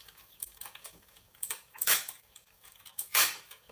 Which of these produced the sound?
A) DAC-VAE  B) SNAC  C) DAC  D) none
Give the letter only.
C